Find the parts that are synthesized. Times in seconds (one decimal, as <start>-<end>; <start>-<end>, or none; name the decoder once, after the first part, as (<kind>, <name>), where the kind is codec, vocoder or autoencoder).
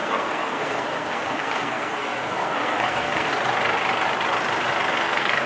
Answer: 0.0-3.3 (codec, SNAC); 4.9-5.5